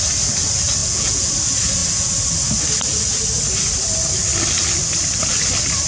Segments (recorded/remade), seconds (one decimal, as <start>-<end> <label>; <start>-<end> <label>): 0.0-0.8 recorded; 0.8-1.3 remade; 1.3-5.9 recorded